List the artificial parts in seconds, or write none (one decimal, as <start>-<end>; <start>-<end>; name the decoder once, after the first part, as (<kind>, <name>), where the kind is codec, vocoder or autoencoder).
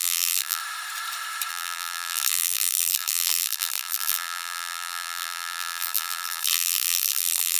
0.0-0.6 (vocoder, BigVGAN v2); 1.5-7.6